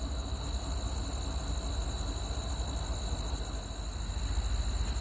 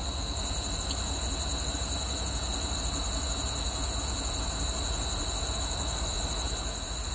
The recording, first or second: first